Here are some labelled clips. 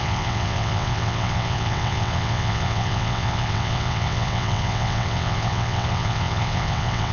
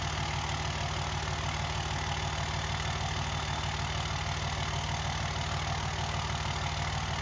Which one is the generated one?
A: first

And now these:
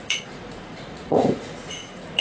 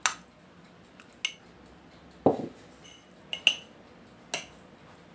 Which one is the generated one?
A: first